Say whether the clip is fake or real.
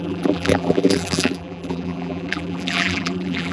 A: fake